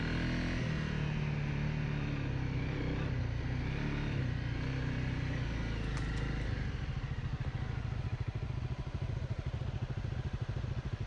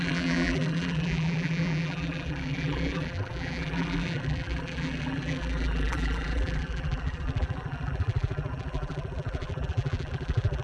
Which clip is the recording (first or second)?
first